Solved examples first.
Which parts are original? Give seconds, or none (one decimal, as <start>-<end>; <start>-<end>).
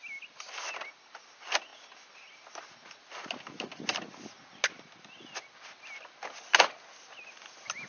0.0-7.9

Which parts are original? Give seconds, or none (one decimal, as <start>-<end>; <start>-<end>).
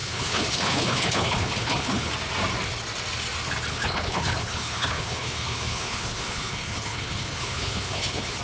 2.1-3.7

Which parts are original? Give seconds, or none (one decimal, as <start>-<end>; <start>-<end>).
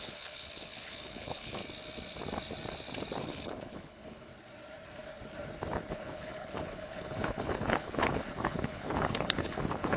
1.6-3.2; 4.3-5.9